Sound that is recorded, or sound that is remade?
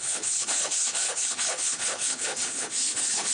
remade